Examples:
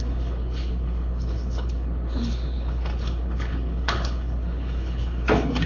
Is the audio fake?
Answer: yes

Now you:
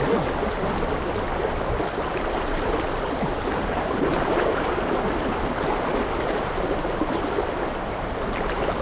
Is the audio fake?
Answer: no